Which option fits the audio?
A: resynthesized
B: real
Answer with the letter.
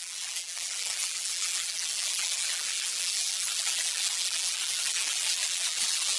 A